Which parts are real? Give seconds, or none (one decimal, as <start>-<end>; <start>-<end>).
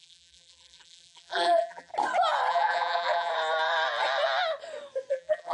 1.9-2.5; 3.3-5.1